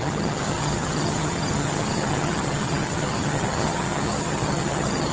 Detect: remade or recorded remade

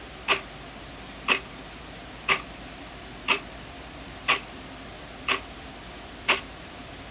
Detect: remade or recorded remade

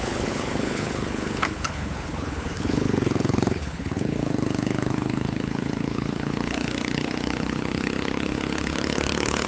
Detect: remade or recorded remade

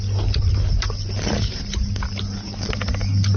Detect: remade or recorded recorded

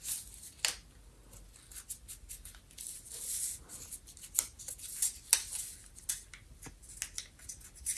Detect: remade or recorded recorded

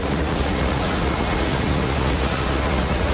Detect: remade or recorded remade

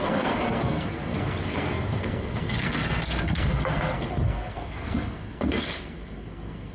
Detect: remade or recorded remade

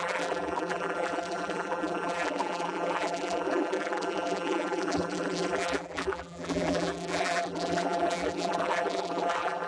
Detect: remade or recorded remade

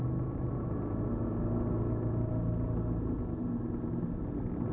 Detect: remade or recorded recorded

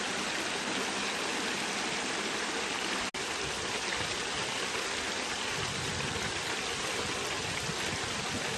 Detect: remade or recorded recorded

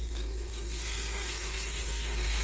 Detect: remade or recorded remade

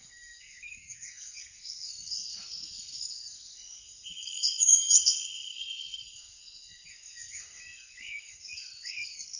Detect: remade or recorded remade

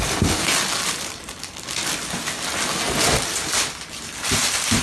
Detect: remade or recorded recorded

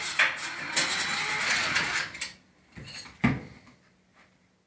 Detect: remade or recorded recorded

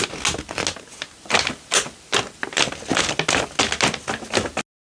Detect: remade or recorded recorded